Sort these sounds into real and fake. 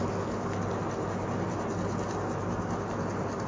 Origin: real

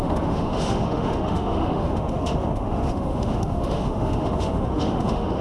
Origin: fake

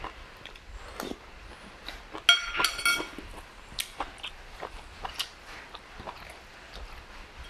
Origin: real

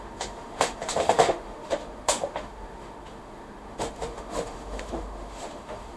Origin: fake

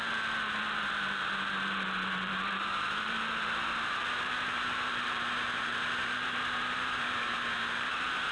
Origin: fake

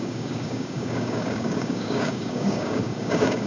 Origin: fake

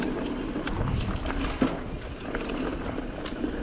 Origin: real